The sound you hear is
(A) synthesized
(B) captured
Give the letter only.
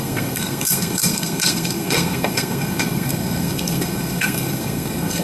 A